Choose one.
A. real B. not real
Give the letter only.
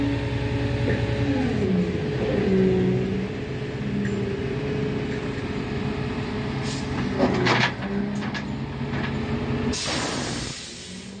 A